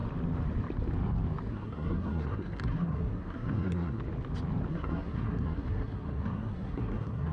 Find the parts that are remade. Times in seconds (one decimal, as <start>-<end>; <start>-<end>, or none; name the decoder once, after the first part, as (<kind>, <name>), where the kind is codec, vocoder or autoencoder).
1.5-4.0 (codec, SNAC); 4.7-7.3